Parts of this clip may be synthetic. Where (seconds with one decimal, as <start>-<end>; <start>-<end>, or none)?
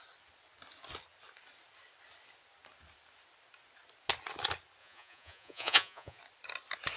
4.8-6.2